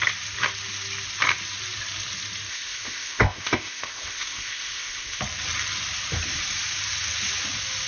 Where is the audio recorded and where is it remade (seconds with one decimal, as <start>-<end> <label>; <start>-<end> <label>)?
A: 0.0-2.5 recorded; 2.5-5.2 remade; 5.2-7.9 recorded